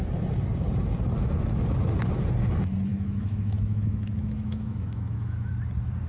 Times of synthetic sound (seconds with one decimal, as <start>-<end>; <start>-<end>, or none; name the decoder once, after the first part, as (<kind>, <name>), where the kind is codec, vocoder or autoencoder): 2.9-5.5 (autoencoder, DAC-VAE)